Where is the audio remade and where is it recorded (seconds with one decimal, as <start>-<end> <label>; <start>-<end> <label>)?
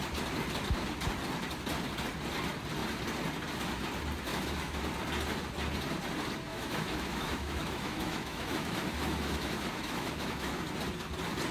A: 0.0-4.3 recorded; 4.3-4.8 remade; 4.8-6.5 recorded; 6.5-10.6 remade; 10.6-11.5 recorded